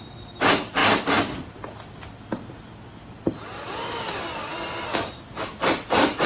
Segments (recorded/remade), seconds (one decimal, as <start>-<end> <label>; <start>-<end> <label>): 0.0-6.3 recorded